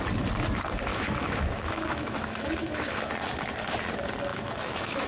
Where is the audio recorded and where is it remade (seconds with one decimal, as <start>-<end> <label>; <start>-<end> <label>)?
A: 0.0-0.9 recorded; 0.9-3.1 remade; 3.1-4.3 recorded; 4.3-5.1 remade